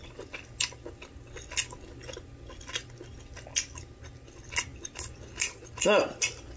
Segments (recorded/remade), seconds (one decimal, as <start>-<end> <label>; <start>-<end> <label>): 0.0-6.6 recorded